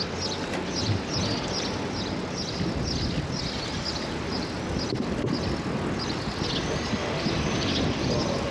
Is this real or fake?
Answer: real